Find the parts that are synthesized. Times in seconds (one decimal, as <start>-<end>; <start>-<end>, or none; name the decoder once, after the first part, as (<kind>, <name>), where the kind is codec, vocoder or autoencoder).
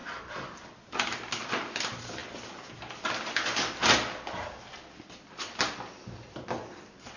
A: none